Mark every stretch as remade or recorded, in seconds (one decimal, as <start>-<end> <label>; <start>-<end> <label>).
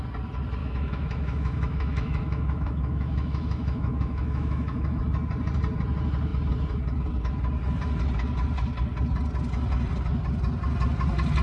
0.0-0.6 recorded; 0.6-5.0 remade; 5.0-11.4 recorded